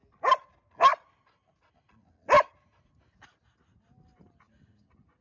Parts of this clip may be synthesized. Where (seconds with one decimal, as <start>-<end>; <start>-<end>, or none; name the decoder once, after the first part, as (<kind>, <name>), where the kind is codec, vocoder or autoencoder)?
none